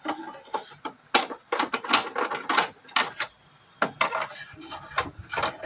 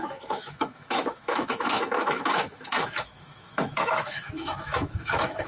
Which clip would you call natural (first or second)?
first